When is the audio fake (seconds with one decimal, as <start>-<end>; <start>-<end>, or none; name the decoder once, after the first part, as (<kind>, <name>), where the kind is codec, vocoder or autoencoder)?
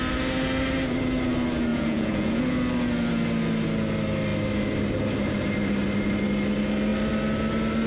1.7-2.4 (vocoder, Vocos)